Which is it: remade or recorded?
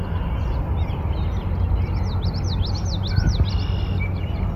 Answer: recorded